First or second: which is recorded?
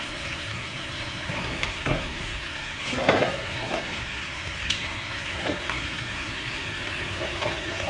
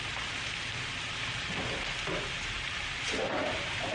second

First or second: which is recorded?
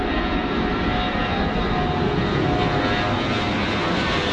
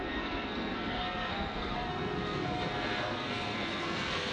first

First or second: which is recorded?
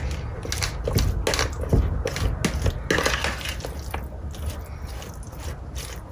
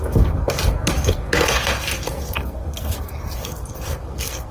first